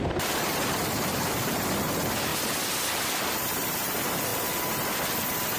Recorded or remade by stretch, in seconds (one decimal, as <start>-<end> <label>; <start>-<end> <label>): 0.0-4.3 remade; 4.3-5.6 recorded